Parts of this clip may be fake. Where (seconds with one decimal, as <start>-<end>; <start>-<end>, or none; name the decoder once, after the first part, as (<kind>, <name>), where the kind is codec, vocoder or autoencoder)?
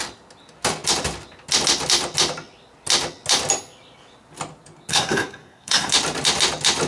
4.9-5.9 (codec, SNAC)